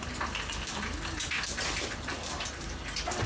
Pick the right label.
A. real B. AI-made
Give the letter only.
A